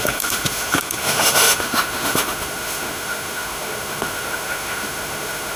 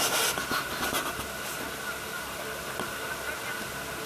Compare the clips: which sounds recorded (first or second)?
second